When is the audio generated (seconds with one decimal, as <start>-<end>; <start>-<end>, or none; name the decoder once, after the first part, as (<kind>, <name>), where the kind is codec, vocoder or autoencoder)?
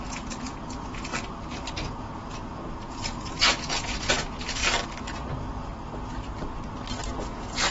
0.0-1.1 (vocoder, Vocos); 1.7-4.6; 5.3-5.7; 7.1-7.7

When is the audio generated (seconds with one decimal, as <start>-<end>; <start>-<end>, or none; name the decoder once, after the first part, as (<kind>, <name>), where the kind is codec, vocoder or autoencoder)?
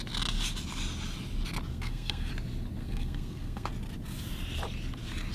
1.7-2.3 (codec, SNAC); 2.8-3.7